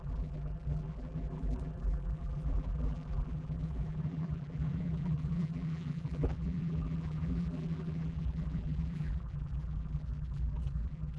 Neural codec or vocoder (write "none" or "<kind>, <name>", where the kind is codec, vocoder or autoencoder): vocoder, BigVGAN v2